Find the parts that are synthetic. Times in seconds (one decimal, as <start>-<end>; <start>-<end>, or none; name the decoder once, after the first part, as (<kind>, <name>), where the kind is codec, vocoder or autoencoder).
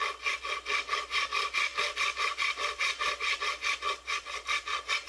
none